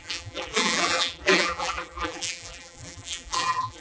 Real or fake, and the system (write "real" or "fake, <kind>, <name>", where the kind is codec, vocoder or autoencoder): fake, vocoder, BigVGAN v2